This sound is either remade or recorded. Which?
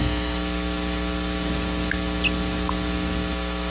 recorded